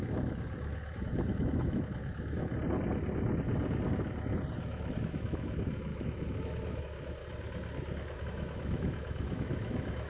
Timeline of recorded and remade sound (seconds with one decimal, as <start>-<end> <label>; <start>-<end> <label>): 0.0-2.5 remade; 2.5-4.6 recorded; 4.6-7.2 remade; 7.2-8.2 recorded; 8.2-10.1 remade